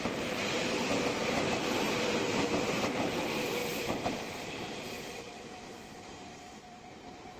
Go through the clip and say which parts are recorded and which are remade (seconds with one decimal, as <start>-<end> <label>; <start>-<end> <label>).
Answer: 0.0-1.2 remade; 1.2-2.5 recorded; 2.5-7.4 remade